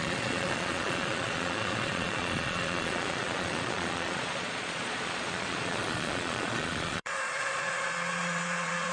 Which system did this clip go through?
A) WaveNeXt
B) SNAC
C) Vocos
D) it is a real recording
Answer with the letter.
C